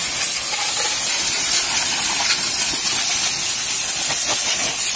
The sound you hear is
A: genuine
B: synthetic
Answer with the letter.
A